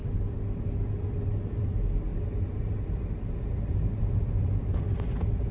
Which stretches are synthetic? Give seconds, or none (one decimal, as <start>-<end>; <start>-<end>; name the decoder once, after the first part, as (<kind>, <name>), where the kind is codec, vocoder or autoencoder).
none